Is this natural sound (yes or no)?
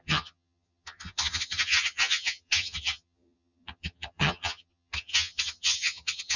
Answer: no